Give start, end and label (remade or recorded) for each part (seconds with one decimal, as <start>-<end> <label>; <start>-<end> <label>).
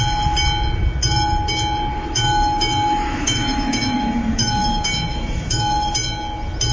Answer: 0.0-1.9 recorded; 1.9-5.9 remade; 5.9-6.7 recorded